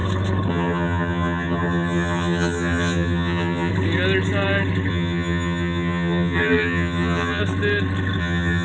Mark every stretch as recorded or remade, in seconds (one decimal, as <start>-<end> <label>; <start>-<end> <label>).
0.0-0.5 recorded; 0.5-3.7 remade; 3.7-4.9 recorded; 4.9-7.4 remade; 7.4-8.2 recorded; 8.2-8.6 remade